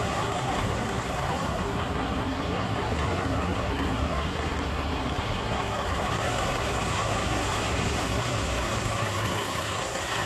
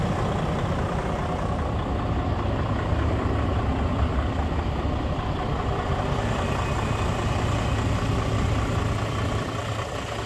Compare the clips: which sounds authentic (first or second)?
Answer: second